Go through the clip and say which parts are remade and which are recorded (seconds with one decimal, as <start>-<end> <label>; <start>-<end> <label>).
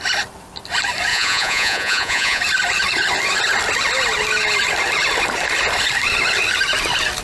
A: 0.0-1.1 recorded; 1.1-2.4 remade; 2.4-7.2 recorded